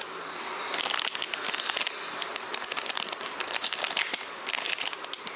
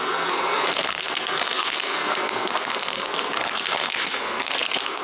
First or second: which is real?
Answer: first